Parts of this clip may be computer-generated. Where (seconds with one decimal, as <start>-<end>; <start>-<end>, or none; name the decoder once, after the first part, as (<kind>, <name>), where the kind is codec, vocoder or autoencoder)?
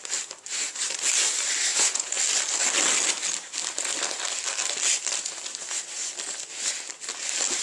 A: 1.7-2.2 (vocoder, Vocos)